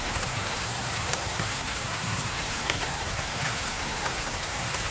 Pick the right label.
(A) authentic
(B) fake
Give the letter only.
B